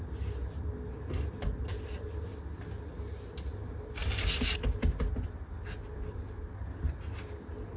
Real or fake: real